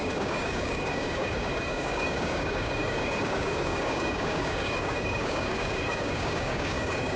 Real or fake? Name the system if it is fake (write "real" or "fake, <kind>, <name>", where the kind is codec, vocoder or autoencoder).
fake, codec, DAC